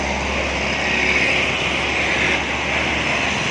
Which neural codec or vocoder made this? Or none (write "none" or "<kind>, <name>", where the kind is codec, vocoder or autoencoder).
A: none